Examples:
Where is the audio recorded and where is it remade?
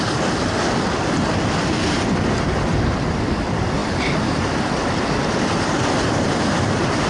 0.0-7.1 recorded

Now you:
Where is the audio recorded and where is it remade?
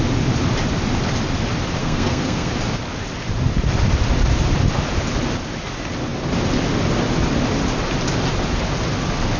0.0-1.8 recorded; 1.8-2.5 remade; 2.5-9.4 recorded